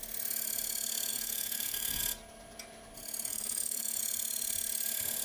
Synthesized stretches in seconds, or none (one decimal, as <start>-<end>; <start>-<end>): 1.1-2.0; 3.3-4.0